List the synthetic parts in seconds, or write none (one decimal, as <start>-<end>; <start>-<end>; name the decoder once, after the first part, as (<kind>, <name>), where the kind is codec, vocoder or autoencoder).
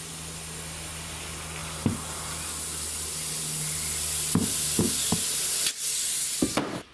none